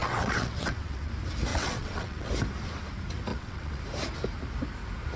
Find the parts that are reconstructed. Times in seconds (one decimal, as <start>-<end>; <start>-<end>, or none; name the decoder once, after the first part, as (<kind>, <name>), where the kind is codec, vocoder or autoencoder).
0.0-1.1 (vocoder, WaveNeXt); 1.5-2.3; 3.3-3.8